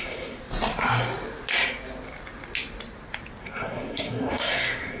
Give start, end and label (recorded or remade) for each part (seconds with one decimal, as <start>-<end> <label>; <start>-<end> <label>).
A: 0.0-0.4 remade; 0.4-3.4 recorded; 3.4-5.0 remade